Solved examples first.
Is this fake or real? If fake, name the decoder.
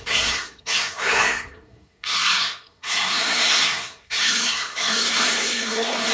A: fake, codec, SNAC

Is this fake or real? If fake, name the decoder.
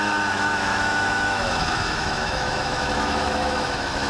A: fake, autoencoder, DAC-VAE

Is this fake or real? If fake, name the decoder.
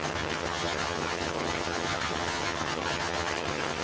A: fake, vocoder, HiFi-GAN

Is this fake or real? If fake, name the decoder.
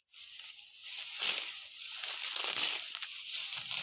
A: real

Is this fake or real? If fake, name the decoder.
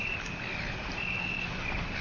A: real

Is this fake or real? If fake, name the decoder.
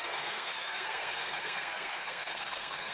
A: fake, codec, SNAC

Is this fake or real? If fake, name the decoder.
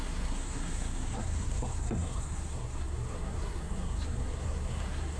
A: fake, codec, SNAC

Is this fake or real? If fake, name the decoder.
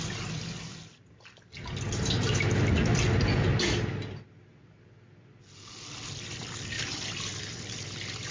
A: real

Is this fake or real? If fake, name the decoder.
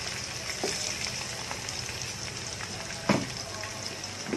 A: real